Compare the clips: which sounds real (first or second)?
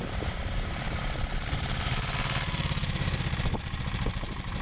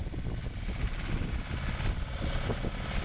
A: second